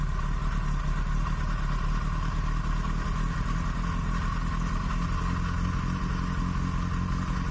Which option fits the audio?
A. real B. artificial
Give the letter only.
A